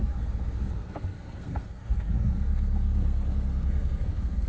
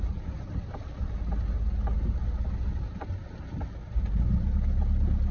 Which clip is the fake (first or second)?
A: first